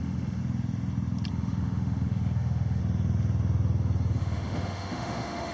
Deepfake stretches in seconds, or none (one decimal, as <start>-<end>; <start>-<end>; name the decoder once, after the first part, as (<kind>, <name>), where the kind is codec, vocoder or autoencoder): 0.0-0.4 (autoencoder, DAC-VAE); 1.3-2.8; 4.2-5.5